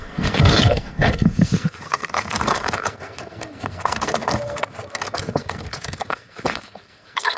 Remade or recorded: remade